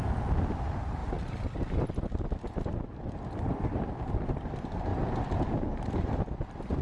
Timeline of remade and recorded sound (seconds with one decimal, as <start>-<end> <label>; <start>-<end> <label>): 0.0-6.8 recorded